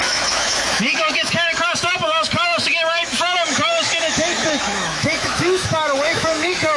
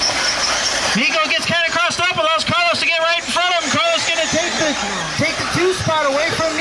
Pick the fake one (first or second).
first